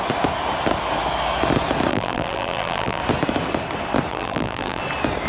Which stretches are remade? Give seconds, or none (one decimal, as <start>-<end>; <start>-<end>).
1.9-3.0; 4.1-4.8